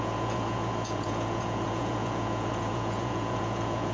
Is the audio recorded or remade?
remade